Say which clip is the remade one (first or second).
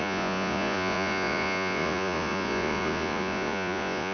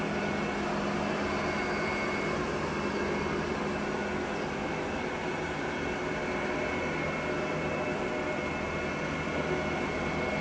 first